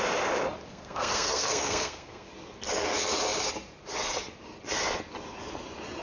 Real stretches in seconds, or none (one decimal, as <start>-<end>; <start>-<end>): 0.0-0.7; 2.3-6.0